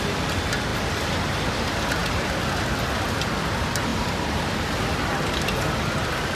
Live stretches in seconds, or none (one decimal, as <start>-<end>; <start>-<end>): 0.0-3.9; 4.4-6.4